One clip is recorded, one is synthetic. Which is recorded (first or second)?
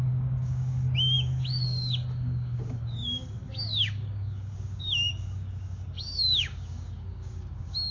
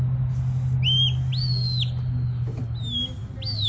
second